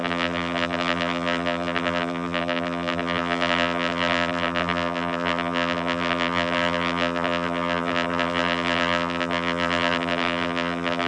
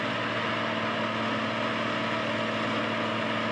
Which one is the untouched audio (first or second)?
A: second